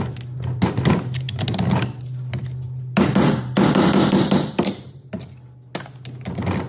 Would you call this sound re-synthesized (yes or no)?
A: no